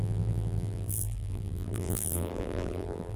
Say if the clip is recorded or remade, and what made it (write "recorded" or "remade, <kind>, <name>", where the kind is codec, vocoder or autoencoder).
remade, vocoder, BigVGAN v2